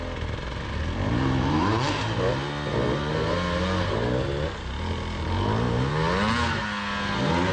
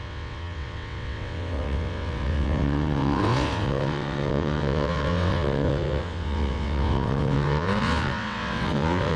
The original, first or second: first